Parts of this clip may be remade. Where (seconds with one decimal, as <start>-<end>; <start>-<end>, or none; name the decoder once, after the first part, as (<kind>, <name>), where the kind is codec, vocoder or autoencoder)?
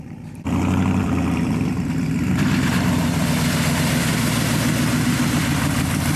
0.0-4.1 (vocoder, BigVGAN v2); 5.1-6.2